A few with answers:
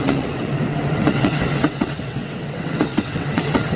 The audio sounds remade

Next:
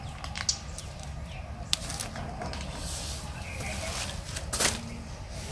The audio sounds recorded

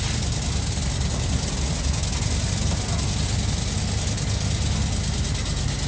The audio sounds recorded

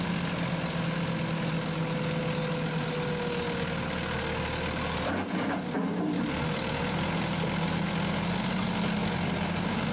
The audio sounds recorded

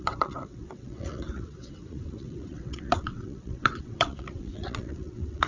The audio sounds remade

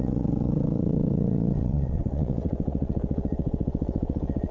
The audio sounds remade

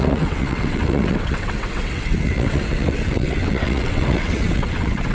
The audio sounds remade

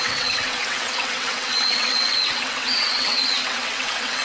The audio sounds remade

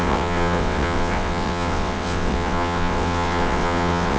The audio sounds remade